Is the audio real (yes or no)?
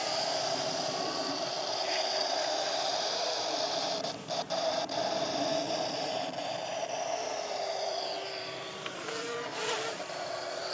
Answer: no